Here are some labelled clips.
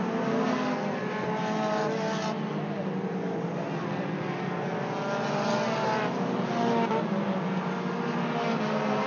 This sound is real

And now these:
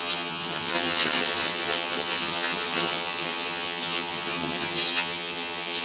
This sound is fake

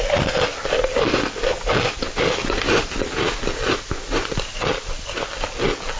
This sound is real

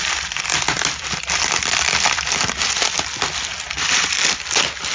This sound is real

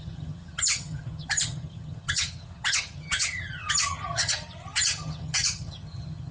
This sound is fake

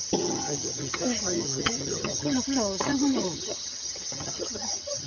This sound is fake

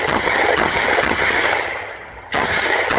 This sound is fake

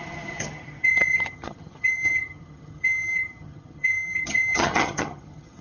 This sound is fake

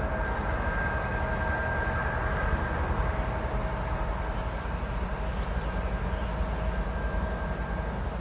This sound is real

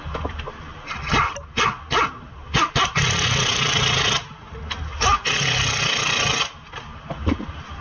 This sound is real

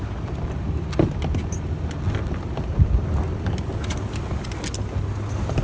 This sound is real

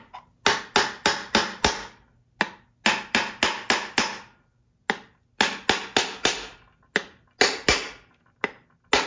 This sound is real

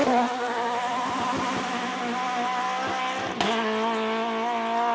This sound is real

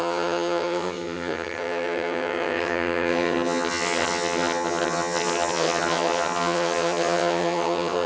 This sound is fake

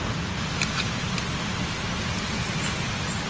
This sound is real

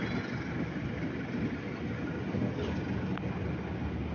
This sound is real